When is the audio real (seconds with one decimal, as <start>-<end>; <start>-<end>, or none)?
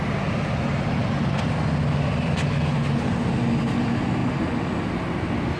0.0-5.6